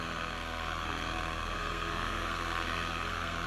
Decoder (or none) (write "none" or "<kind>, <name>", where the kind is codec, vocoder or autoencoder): codec, SNAC